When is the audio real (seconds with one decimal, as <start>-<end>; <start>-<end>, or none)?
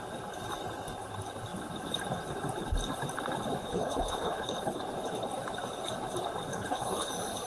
0.0-3.6; 4.8-6.5; 7.1-7.5